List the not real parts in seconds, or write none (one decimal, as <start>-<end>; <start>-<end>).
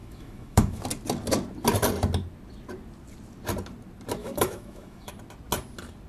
0.0-0.8; 4.2-5.1